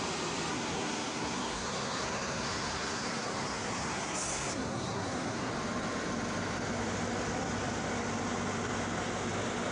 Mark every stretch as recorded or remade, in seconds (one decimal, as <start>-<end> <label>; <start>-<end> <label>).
0.0-0.5 recorded; 0.5-5.5 remade; 5.5-9.7 recorded